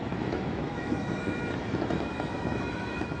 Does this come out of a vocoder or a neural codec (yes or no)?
yes